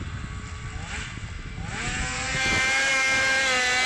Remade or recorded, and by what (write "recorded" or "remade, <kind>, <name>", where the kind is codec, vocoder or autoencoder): recorded